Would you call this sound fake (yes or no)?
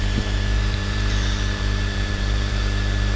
yes